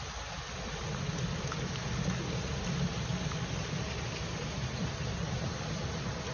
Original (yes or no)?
yes